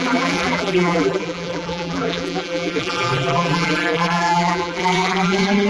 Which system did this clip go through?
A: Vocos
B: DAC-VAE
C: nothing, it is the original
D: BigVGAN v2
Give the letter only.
D